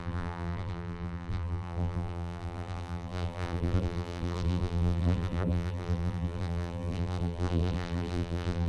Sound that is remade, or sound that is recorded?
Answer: remade